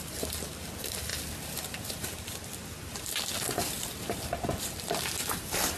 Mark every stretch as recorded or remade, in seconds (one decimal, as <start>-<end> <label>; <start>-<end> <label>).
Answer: 0.0-5.8 recorded